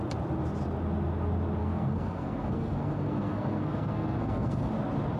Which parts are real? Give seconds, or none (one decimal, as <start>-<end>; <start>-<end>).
0.0-1.6; 4.7-5.2